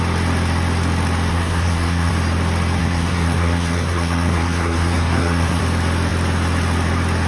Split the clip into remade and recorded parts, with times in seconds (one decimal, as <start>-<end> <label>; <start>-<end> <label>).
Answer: 0.0-1.3 recorded; 1.3-2.1 remade; 2.1-2.8 recorded; 2.8-5.6 remade; 5.6-7.3 recorded